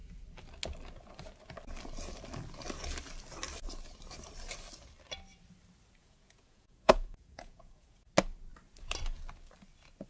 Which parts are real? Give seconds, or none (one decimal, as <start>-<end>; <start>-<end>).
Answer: 0.0-6.0; 8.1-10.1